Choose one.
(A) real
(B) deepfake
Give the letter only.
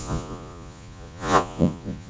B